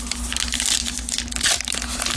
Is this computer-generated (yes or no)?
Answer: no